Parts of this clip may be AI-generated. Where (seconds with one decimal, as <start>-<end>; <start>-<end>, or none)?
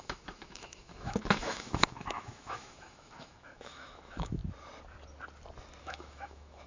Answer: 0.0-4.4; 5.8-6.7